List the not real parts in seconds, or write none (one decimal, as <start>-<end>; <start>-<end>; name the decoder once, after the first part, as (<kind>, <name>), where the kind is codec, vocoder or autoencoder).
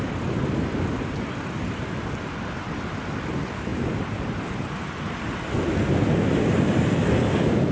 3.7-5.0 (vocoder, BigVGAN v2)